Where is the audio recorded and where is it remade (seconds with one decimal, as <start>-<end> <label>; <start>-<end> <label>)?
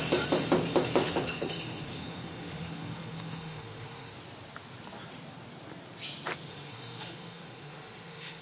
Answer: 0.0-1.0 recorded; 1.0-4.1 remade; 4.1-6.5 recorded; 6.5-8.4 remade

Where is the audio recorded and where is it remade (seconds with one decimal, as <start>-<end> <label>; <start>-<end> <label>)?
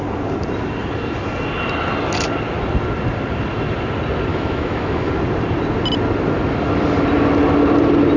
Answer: 0.0-4.3 recorded; 4.3-5.1 remade; 5.1-8.2 recorded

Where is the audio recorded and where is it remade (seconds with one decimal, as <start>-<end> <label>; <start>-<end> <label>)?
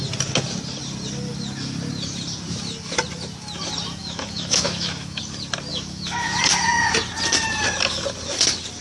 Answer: 0.0-4.0 recorded; 4.0-5.2 remade; 5.2-5.7 recorded; 5.7-6.4 remade; 6.4-8.8 recorded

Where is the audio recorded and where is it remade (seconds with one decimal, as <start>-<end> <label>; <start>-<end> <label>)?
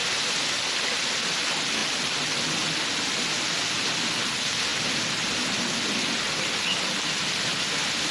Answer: 0.0-8.1 recorded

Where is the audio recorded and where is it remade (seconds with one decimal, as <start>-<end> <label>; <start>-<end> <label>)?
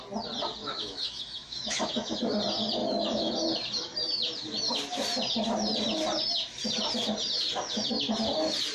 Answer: 0.0-0.6 recorded; 0.6-2.2 remade; 2.2-2.8 recorded; 2.8-3.3 remade; 3.3-8.7 recorded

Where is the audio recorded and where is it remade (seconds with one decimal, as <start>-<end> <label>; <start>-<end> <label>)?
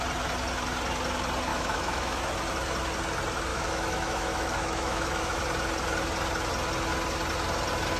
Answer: 0.0-1.5 recorded; 1.5-2.2 remade; 2.2-3.5 recorded; 3.5-5.4 remade; 5.4-8.0 recorded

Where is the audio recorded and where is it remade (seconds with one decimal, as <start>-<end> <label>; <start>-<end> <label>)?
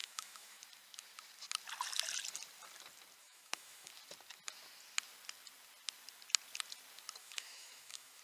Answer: 0.0-0.6 remade; 0.6-3.2 recorded; 3.2-3.9 remade; 3.9-7.2 recorded; 7.2-8.2 remade